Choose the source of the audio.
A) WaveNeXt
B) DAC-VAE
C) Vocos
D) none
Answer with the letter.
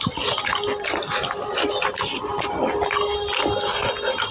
D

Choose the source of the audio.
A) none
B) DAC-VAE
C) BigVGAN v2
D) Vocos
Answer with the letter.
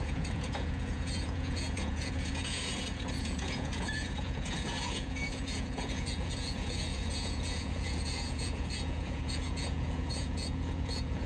D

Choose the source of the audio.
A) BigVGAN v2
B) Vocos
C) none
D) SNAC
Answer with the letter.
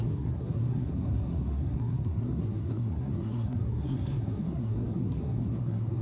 D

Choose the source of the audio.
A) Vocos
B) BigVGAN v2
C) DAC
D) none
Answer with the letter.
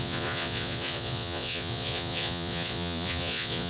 A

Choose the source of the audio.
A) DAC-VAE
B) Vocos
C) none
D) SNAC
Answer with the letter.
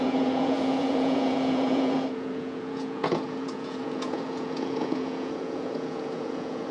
B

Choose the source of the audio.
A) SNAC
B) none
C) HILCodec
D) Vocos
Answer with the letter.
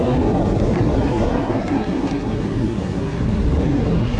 A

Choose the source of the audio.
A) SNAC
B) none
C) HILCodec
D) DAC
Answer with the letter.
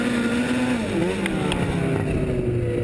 B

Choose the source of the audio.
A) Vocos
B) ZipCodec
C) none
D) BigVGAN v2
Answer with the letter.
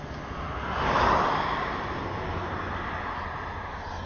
C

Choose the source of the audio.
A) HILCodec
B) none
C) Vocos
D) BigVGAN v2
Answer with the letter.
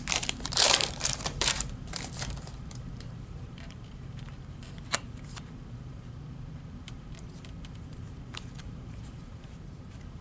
D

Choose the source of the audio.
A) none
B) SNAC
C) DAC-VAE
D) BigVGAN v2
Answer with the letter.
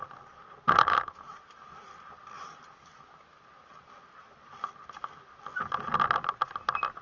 A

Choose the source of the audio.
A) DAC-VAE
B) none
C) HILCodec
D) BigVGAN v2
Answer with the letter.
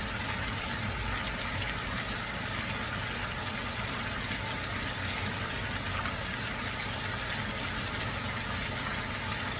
B